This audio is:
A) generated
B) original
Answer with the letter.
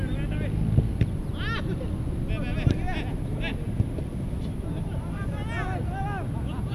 B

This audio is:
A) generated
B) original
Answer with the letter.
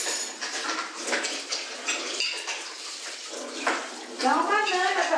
B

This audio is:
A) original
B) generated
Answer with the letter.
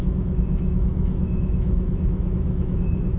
B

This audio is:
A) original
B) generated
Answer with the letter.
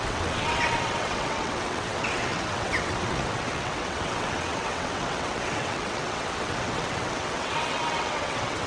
B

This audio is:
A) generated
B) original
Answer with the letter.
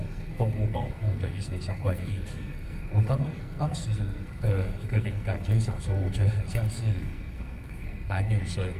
A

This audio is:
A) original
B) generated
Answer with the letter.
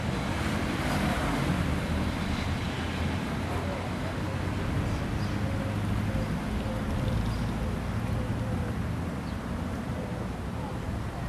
B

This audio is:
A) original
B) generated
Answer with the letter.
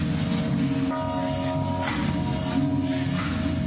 A